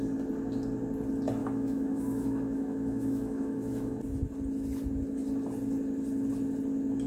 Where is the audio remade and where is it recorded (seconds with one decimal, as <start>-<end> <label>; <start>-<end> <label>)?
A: 0.0-1.4 recorded; 1.4-4.0 remade; 4.0-7.1 recorded